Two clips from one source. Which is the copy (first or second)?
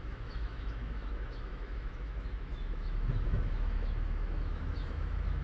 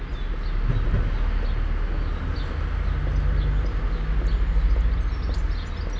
first